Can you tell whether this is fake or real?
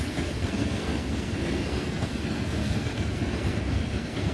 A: fake